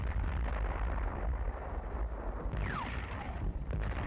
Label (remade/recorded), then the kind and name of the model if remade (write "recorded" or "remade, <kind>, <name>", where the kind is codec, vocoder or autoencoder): remade, vocoder, BigVGAN v2